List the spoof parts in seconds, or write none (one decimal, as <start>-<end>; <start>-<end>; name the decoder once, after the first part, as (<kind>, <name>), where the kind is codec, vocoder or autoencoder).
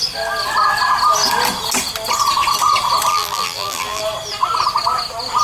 3.1-4.0 (vocoder, BigVGAN v2)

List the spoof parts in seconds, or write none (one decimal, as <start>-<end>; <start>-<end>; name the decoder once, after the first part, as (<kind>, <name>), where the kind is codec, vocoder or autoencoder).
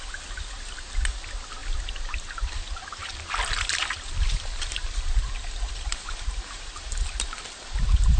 none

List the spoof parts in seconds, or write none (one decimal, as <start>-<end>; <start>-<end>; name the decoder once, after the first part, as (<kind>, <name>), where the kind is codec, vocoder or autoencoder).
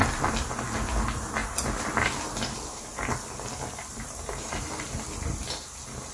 3.9-4.7 (vocoder, BigVGAN v2)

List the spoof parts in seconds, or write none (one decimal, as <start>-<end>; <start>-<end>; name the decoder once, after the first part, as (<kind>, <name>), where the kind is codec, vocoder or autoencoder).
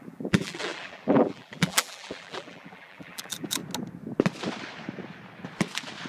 0.0-3.6 (vocoder, BigVGAN v2)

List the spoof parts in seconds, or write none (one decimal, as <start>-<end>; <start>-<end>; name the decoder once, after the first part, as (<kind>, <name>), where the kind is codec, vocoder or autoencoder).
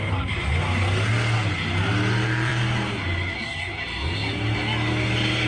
none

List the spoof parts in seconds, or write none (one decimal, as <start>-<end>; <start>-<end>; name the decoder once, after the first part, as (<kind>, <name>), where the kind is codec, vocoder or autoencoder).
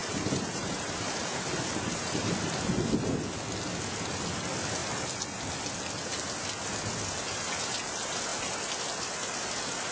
0.0-2.3 (vocoder, BigVGAN v2)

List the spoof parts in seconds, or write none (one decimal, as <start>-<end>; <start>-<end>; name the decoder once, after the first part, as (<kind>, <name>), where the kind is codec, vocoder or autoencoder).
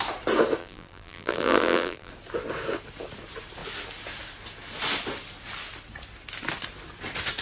0.6-2.1 (vocoder, BigVGAN v2)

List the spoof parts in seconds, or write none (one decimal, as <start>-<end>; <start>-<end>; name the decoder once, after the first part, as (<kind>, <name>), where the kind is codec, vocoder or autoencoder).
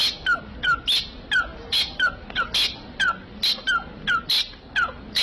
none